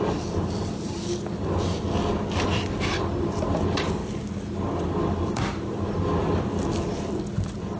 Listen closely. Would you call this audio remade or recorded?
recorded